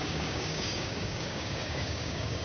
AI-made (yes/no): yes